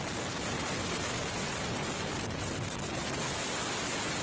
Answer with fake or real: real